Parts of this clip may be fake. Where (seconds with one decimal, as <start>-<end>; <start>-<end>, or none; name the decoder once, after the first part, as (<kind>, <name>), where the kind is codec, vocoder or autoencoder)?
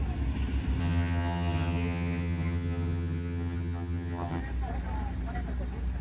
0.8-4.4 (vocoder, HiFi-GAN)